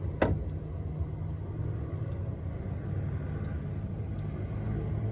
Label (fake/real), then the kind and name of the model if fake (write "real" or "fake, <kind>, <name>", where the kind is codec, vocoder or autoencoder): real